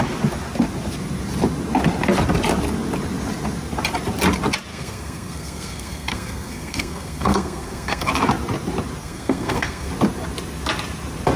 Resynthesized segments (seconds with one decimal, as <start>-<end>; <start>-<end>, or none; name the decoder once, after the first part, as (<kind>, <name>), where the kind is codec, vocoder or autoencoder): 4.7-8.1 (codec, SNAC); 9.0-9.9

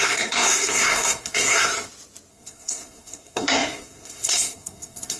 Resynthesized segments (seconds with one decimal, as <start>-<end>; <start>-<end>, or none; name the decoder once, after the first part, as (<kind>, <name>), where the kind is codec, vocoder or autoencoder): 0.0-1.7 (codec, SNAC); 2.3-5.2

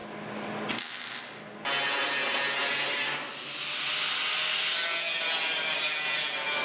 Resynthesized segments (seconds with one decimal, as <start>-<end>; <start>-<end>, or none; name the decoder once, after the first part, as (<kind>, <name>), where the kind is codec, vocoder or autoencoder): none

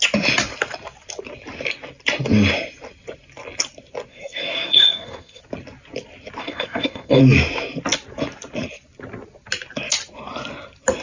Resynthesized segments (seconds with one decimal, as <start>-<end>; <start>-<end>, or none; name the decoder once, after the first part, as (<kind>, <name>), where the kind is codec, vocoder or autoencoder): 4.1-5.4 (codec, SNAC); 6.4-7.2

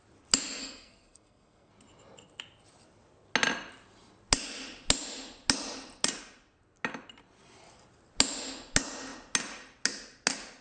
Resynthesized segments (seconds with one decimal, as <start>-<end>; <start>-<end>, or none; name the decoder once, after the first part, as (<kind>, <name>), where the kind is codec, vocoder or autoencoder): 0.6-1.7 (codec, SNAC)

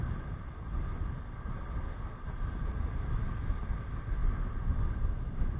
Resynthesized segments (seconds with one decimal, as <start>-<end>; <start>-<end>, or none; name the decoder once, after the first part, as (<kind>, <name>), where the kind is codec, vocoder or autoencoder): none